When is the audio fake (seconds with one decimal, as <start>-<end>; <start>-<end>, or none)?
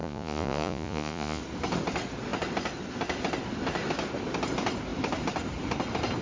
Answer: 0.0-1.4